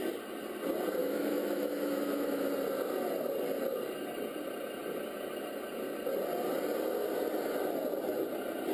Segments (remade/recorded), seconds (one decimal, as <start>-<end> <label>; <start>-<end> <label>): 0.0-1.0 recorded; 1.0-2.5 remade; 2.5-8.7 recorded